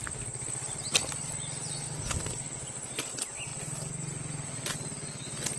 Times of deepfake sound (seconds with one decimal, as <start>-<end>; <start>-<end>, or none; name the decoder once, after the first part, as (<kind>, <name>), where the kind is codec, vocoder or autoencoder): none